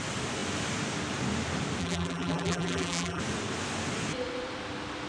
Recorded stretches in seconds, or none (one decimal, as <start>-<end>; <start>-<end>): 0.0-1.8; 3.2-5.1